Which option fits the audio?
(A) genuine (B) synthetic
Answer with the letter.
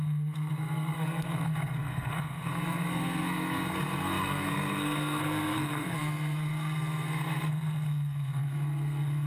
B